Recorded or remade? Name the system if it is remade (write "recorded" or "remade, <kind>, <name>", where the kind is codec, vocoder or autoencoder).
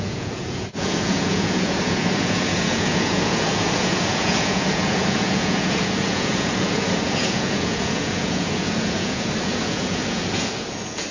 remade, vocoder, Vocos